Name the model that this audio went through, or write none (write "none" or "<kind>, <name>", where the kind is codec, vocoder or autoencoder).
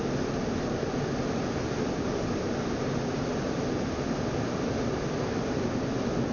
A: none